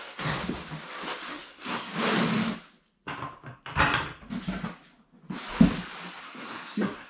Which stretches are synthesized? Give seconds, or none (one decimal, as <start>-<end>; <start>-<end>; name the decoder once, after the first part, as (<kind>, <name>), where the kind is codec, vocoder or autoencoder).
0.0-0.4 (codec, SNAC); 1.3-1.9; 6.2-7.1